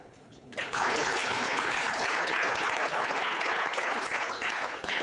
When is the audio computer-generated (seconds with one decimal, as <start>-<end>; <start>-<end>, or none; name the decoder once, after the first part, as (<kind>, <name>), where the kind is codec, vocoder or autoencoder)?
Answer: 0.0-5.0 (codec, HILCodec)